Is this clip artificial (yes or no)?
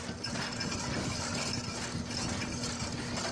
no